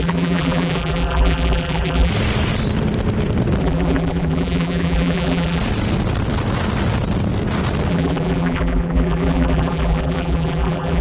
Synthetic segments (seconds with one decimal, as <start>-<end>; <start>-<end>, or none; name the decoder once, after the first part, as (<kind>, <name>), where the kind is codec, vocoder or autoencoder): 0.0-2.1 (vocoder, BigVGAN v2); 3.6-5.6; 7.9-11.0